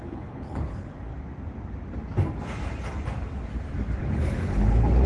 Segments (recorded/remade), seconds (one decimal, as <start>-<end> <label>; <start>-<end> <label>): 0.0-1.1 remade; 1.1-4.0 recorded; 4.0-5.1 remade